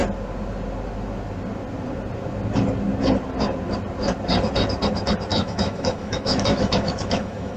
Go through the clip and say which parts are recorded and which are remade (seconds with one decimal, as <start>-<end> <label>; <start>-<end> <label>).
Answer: 0.0-5.3 recorded; 5.3-7.6 remade

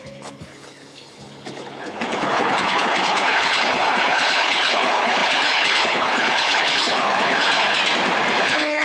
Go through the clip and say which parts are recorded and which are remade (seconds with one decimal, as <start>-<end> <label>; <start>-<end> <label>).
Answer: 0.0-7.8 remade; 7.8-8.4 recorded; 8.4-8.8 remade

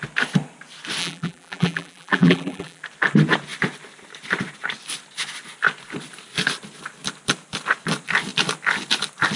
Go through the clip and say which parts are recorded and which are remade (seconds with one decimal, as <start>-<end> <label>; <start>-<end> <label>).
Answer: 0.0-1.0 recorded; 1.0-2.8 remade; 2.8-9.4 recorded